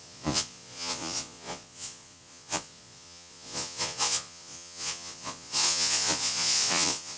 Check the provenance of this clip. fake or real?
fake